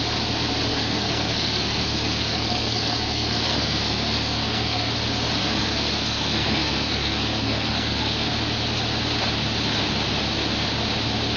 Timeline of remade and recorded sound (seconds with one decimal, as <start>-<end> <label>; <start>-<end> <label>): 0.0-0.7 recorded; 0.7-4.9 remade; 4.9-5.4 recorded; 5.4-8.3 remade; 8.3-11.4 recorded